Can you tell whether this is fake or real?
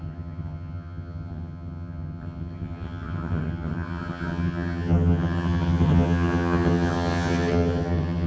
fake